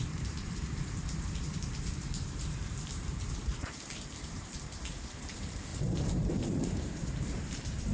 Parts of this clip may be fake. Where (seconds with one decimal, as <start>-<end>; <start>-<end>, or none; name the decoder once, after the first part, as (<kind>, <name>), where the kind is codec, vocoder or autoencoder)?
0.0-7.9 (vocoder, BigVGAN v2)